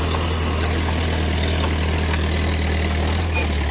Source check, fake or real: real